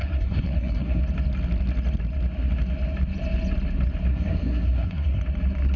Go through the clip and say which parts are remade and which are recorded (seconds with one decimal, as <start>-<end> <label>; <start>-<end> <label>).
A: 0.0-1.0 remade; 1.0-4.1 recorded; 4.1-5.2 remade; 5.2-5.8 recorded